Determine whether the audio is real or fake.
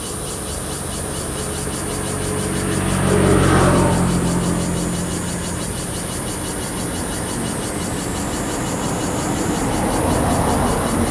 real